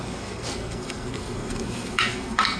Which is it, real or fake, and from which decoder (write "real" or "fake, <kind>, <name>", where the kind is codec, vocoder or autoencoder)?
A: fake, codec, SNAC